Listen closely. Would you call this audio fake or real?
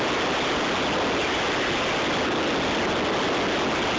real